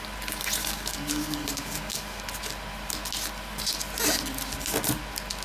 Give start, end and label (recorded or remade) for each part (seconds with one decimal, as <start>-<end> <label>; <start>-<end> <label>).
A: 0.0-0.6 recorded; 0.6-2.2 remade; 2.2-5.4 recorded